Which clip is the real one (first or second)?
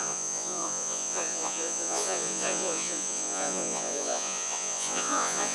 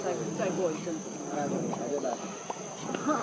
second